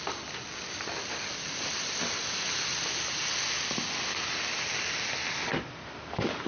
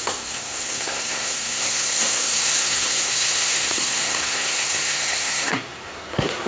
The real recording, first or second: first